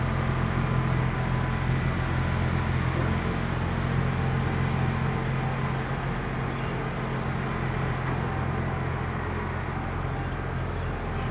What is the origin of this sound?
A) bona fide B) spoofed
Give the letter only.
A